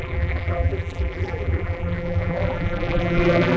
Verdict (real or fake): fake